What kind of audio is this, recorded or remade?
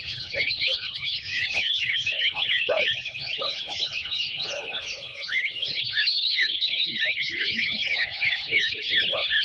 remade